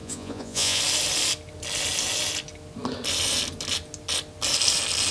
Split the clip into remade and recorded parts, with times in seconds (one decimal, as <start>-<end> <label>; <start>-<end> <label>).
0.0-0.8 remade; 0.8-5.1 recorded